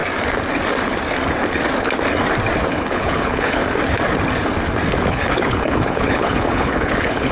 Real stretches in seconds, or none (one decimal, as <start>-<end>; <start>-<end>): 0.0-2.7; 3.6-5.1